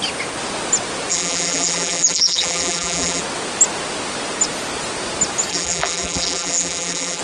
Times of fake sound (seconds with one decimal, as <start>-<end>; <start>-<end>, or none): 1.1-3.2; 5.5-7.2